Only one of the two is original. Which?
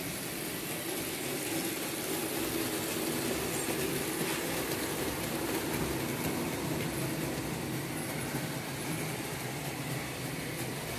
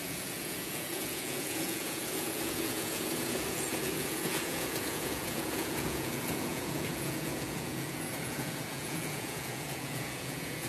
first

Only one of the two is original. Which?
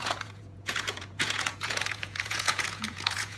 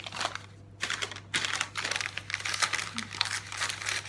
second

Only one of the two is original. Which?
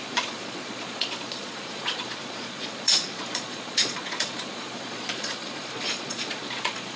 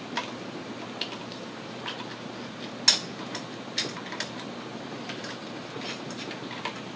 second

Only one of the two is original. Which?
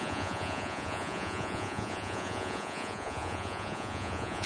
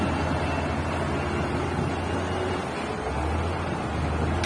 second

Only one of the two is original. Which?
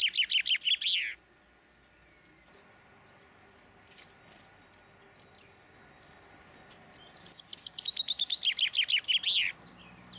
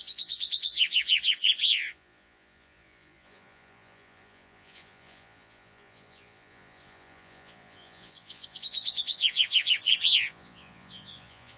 first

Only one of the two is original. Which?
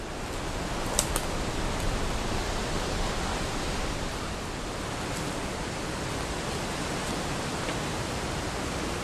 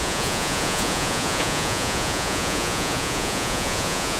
first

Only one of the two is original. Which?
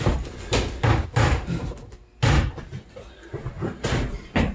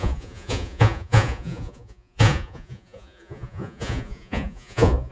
first